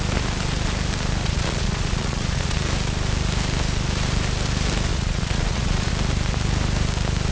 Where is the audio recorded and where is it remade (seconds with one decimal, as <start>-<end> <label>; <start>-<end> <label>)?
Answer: 0.0-1.2 recorded; 1.2-2.6 remade; 2.6-4.9 recorded; 4.9-5.9 remade; 5.9-7.3 recorded